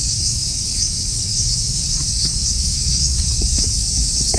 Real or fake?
fake